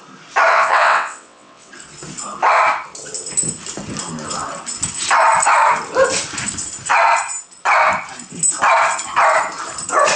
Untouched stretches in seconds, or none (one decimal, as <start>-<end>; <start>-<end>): 0.0-0.5; 1.7-10.2